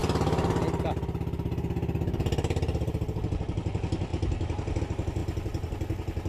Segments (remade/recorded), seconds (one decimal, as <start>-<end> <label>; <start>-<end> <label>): 0.0-4.1 recorded; 4.1-4.8 remade; 4.8-6.3 recorded